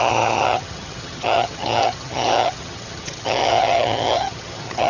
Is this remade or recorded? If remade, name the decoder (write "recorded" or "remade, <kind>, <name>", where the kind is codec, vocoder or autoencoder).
remade, vocoder, HiFi-GAN